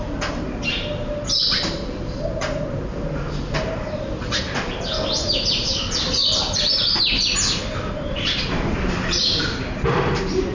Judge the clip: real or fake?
fake